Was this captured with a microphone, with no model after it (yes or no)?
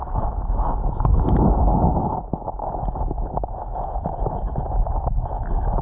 no